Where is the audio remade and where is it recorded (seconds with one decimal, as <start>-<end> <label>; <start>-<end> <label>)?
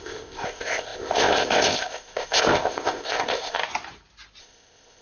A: 0.0-3.6 remade; 3.6-4.4 recorded; 4.4-5.0 remade